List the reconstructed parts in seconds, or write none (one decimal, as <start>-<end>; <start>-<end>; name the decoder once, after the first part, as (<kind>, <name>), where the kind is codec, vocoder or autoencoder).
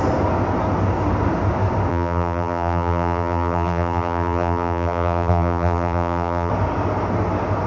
1.9-6.5 (vocoder, BigVGAN v2)